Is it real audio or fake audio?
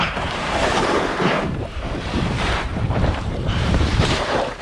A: fake